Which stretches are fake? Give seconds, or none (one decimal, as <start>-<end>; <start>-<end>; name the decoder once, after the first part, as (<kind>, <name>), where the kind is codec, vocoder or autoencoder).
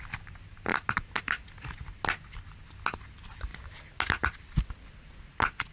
none